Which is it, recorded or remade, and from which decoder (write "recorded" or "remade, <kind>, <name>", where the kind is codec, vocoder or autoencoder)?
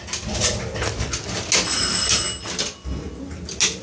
recorded